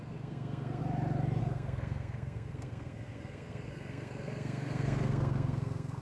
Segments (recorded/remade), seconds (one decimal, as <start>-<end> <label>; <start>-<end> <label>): 0.0-0.8 remade; 0.8-1.4 recorded; 1.4-6.0 remade